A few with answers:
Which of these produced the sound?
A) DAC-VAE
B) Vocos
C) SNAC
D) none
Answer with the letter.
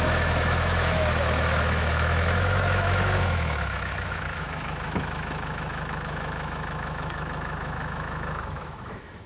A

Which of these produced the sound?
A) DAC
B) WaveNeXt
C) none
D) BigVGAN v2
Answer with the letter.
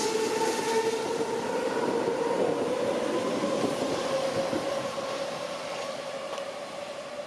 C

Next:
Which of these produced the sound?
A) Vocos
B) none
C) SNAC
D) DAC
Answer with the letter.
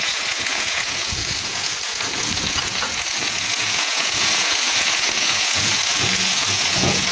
A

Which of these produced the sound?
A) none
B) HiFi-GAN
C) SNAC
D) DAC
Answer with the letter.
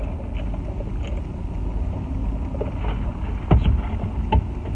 A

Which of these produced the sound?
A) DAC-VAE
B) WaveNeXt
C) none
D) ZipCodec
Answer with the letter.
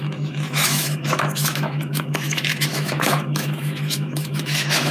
A